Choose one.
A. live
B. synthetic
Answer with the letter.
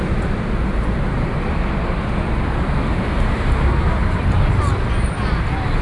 A